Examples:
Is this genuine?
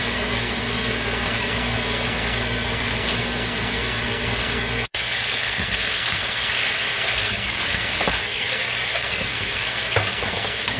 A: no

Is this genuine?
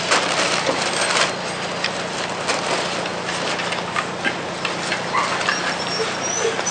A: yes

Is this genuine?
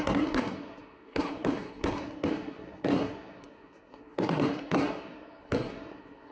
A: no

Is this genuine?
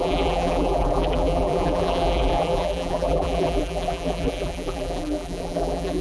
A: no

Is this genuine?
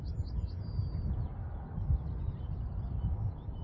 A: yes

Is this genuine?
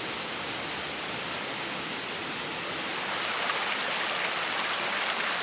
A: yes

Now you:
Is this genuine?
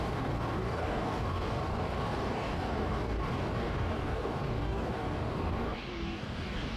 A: no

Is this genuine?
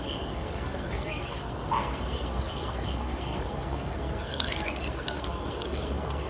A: no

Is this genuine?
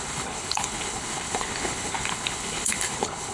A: no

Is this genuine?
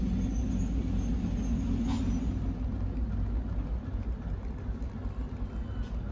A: yes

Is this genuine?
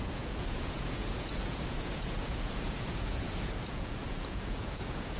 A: no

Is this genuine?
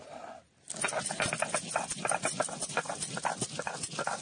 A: yes